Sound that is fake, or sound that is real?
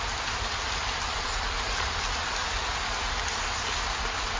real